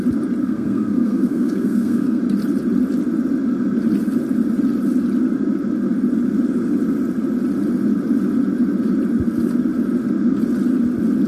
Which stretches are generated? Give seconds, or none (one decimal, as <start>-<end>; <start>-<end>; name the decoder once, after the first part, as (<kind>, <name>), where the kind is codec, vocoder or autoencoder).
0.4-2.2 (codec, SNAC)

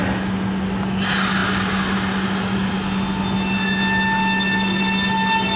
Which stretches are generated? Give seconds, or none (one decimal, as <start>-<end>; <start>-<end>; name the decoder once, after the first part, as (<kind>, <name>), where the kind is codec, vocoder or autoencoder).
none

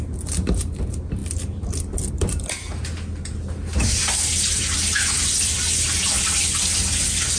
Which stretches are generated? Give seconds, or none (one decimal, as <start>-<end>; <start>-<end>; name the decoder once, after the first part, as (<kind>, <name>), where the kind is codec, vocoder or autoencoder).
none

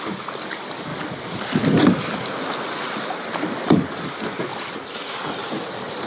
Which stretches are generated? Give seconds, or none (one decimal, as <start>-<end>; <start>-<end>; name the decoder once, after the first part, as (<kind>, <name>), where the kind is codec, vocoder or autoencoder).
none

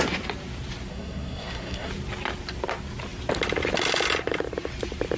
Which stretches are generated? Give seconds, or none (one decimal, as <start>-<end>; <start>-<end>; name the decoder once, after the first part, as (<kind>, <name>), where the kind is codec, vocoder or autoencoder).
0.9-1.9 (codec, SNAC)

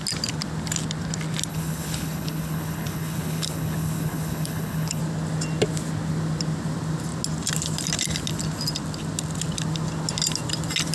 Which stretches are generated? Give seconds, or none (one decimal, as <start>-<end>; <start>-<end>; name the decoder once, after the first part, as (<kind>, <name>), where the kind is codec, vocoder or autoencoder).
1.5-5.0 (codec, HILCodec)